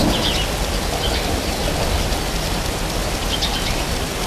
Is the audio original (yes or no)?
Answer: yes